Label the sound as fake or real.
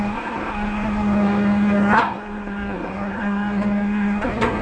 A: fake